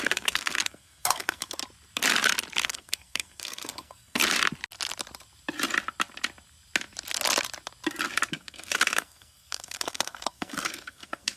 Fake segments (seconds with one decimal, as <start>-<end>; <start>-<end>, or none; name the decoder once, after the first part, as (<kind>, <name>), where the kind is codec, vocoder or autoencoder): 0.0-1.6 (codec, SNAC); 2.6-4.2; 8.3-11.4